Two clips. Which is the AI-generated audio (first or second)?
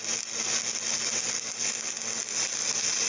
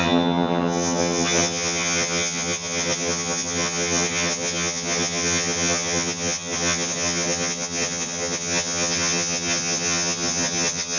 second